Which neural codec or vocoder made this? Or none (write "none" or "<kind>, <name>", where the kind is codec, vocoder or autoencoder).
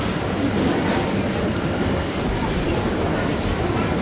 none